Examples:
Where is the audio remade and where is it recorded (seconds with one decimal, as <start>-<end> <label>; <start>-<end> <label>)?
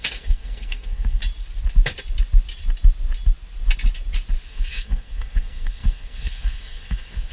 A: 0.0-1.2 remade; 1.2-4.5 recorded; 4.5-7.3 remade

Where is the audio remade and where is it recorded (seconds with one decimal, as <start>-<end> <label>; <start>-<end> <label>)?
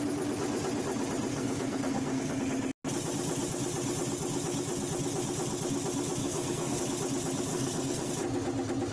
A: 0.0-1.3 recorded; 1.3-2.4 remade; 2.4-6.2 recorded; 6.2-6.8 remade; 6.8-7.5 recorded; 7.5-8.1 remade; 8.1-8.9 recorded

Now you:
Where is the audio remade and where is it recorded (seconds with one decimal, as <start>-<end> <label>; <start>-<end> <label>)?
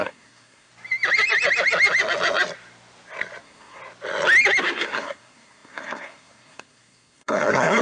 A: 0.0-0.7 remade; 0.7-3.4 recorded; 3.4-3.8 remade; 3.8-4.6 recorded; 4.6-7.8 remade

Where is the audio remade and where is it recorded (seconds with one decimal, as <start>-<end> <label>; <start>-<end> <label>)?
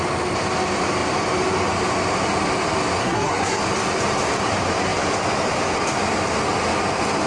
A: 0.0-3.0 recorded; 3.0-3.6 remade; 3.6-7.3 recorded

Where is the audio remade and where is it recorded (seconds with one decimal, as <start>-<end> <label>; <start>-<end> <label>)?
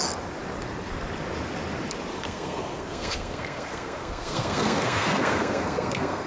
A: 0.0-2.2 recorded; 2.2-6.3 remade